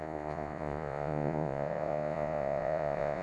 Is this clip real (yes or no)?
no